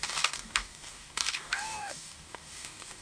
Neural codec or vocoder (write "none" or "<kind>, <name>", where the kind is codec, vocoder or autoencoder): codec, DAC